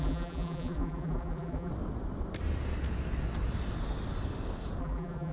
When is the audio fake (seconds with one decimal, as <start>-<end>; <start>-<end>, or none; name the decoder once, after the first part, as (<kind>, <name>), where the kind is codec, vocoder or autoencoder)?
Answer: 0.0-1.7 (vocoder, BigVGAN v2); 4.8-5.3